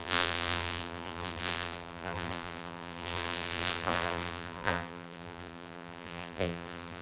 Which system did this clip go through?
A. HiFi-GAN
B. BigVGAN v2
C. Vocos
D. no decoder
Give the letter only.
B